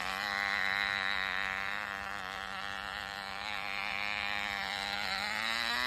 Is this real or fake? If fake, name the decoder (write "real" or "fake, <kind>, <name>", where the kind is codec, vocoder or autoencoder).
fake, vocoder, BigVGAN v2